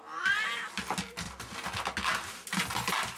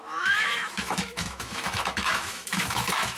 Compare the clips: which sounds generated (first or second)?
second